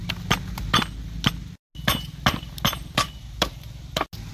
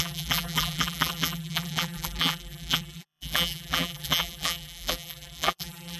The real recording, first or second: first